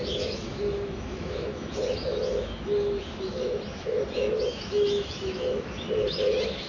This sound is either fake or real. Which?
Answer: fake